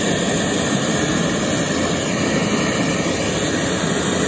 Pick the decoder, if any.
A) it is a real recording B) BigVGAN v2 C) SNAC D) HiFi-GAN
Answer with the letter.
B